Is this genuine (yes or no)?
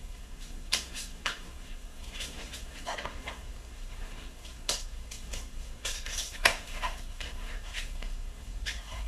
no